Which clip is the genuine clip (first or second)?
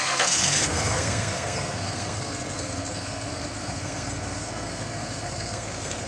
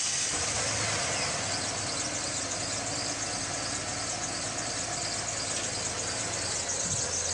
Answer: second